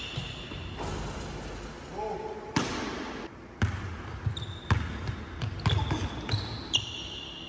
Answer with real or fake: real